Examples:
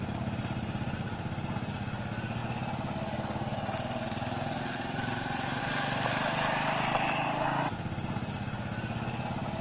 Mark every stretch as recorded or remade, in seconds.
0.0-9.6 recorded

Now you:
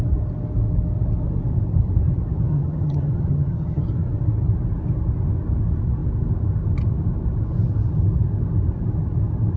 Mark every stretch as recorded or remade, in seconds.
0.0-2.5 recorded; 2.5-3.8 remade; 3.8-9.6 recorded

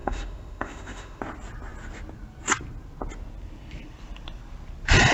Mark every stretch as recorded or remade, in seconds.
0.0-1.2 remade; 1.2-5.1 recorded

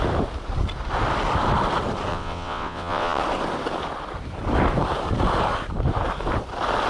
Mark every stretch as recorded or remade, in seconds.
0.0-2.1 recorded; 2.1-3.2 remade; 3.2-6.9 recorded